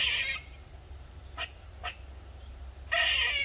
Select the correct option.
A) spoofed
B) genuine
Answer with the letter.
B